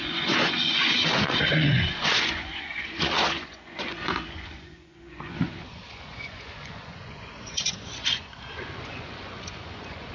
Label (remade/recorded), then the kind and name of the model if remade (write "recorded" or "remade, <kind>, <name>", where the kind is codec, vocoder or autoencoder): remade, vocoder, Vocos